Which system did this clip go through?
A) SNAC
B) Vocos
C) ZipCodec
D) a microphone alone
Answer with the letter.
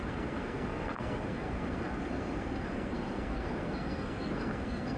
A